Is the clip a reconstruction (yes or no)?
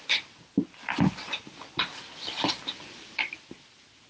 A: no